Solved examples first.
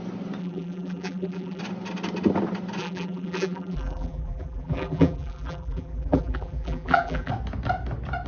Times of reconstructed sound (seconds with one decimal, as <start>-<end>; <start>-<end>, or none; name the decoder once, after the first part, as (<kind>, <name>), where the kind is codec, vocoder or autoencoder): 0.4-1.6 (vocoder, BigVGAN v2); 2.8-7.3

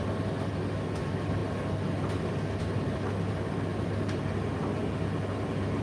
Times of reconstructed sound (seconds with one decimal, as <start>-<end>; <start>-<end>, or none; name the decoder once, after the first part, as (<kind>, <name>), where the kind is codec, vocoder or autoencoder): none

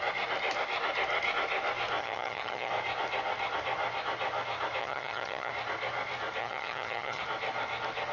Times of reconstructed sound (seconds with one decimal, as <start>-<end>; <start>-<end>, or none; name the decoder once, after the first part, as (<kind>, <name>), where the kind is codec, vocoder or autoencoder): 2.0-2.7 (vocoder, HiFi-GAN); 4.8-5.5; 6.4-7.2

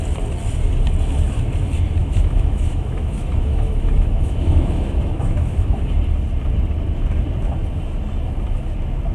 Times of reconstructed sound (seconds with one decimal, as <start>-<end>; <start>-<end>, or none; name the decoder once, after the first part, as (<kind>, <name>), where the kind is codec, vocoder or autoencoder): 2.0-6.0 (autoencoder, DAC-VAE)